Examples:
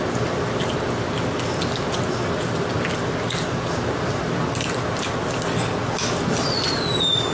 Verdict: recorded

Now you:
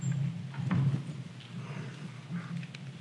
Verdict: recorded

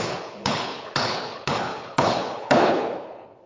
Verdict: remade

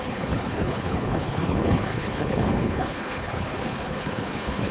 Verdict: remade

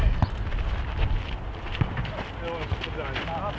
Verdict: recorded